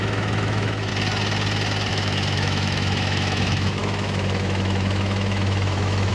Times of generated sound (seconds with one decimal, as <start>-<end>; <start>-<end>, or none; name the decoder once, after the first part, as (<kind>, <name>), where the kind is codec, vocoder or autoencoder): 0.0-0.9 (autoencoder, DAC-VAE); 1.9-6.1